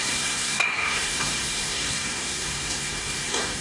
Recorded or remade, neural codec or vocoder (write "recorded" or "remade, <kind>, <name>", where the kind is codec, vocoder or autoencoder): remade, codec, SNAC